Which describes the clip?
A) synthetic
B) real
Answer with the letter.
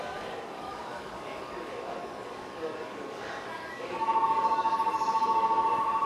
A